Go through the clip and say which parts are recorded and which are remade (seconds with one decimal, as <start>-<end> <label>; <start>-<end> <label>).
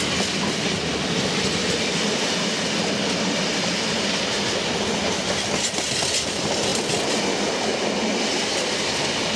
0.0-9.4 recorded